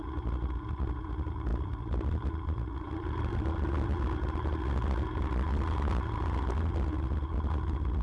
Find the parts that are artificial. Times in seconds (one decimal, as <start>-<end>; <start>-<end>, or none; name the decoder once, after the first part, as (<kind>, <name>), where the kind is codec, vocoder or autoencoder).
1.5-3.6 (vocoder, BigVGAN v2)